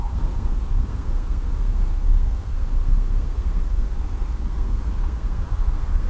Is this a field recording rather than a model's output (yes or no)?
no